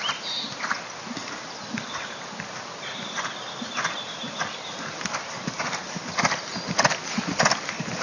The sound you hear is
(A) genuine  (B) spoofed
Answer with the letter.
A